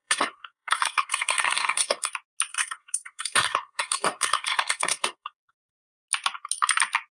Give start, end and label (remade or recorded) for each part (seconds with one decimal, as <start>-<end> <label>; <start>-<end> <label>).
0.0-2.1 remade; 2.1-2.5 recorded; 2.5-5.9 remade; 5.9-7.1 recorded